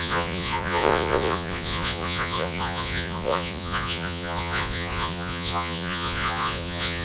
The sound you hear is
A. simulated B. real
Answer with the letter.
A